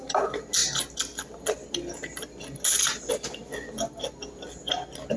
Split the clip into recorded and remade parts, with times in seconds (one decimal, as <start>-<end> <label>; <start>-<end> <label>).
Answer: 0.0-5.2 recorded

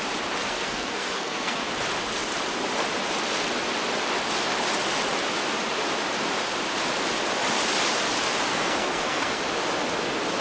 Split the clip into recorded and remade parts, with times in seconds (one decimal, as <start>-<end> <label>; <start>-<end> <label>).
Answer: 0.0-0.4 recorded; 0.4-1.6 remade; 1.6-8.5 recorded; 8.5-9.4 remade; 9.4-10.4 recorded

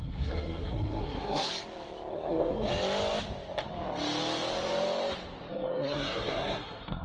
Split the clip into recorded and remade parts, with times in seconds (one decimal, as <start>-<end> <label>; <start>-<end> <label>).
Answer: 0.0-1.5 remade; 1.5-2.1 recorded; 2.1-2.7 remade; 2.7-5.5 recorded; 5.5-7.0 remade

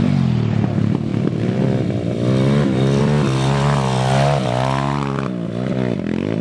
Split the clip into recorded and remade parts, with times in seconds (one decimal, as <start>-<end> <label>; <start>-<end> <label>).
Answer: 0.0-6.4 recorded

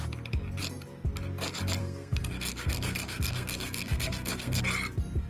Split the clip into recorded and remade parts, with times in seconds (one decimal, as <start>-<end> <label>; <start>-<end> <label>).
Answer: 0.0-1.8 recorded; 1.8-4.6 remade; 4.6-5.3 recorded

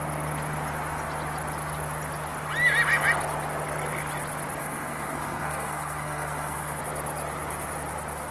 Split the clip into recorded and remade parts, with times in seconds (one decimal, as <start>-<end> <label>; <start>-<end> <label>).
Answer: 0.0-4.6 recorded; 4.6-6.8 remade; 6.8-8.3 recorded

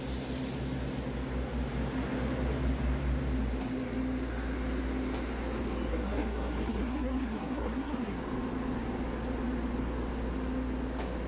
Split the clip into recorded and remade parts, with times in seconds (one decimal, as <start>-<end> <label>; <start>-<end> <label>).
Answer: 0.0-5.9 recorded; 5.9-8.2 remade; 8.2-11.3 recorded